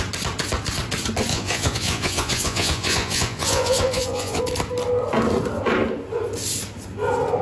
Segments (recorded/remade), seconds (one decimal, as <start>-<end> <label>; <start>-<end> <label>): 0.0-1.3 recorded; 1.3-4.4 remade; 4.4-7.4 recorded